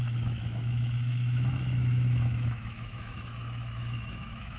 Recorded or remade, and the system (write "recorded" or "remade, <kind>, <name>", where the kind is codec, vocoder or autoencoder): remade, autoencoder, DAC-VAE